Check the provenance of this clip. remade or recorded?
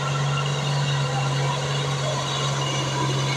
recorded